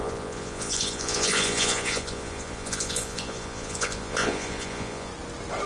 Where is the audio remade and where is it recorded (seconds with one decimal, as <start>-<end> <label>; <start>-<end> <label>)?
0.0-5.1 remade; 5.1-5.7 recorded